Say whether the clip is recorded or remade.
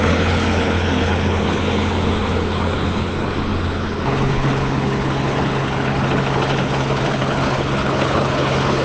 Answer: remade